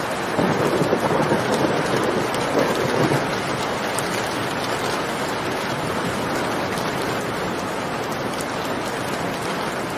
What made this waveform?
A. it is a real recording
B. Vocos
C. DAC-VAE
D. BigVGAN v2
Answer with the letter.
A